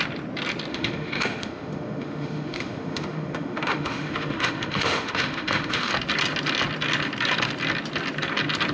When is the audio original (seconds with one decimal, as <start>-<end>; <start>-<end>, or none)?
0.0-0.7; 5.9-8.7